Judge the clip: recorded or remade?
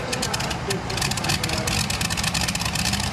recorded